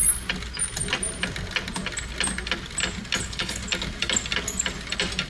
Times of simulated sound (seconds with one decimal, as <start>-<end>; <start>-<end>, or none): 3.2-3.6